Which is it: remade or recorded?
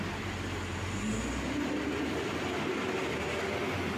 recorded